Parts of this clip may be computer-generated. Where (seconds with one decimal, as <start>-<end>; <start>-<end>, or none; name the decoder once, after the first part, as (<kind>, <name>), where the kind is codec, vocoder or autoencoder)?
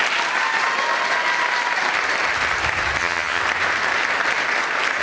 3.0-3.4 (vocoder, HiFi-GAN)